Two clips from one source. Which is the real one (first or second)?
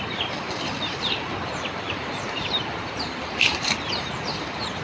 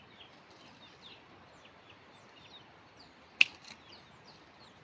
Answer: second